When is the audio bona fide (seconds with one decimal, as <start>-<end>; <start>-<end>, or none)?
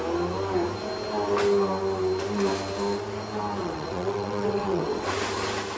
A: 0.0-3.6; 5.1-5.8